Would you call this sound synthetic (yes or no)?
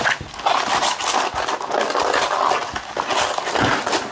no